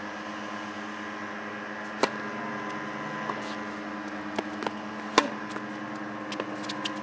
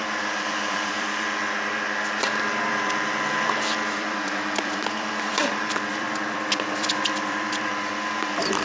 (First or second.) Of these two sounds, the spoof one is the second